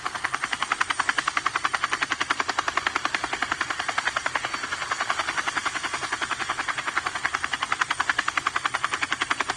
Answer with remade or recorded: recorded